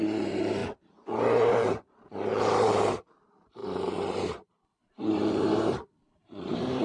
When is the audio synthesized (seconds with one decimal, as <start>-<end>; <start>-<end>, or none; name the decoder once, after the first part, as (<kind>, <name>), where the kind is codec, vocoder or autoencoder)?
0.0-6.8 (vocoder, BigVGAN v2)